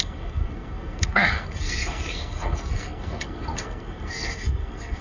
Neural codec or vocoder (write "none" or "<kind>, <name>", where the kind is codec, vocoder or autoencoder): codec, SNAC